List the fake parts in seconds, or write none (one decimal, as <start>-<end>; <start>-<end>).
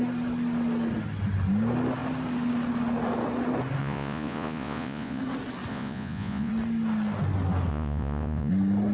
3.8-5.2; 5.7-6.5; 7.7-8.5